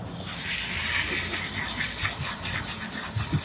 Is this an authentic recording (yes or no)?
yes